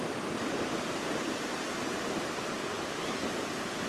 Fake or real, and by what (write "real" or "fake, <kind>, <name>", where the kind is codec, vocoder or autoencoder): real